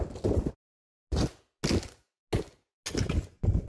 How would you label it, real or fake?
real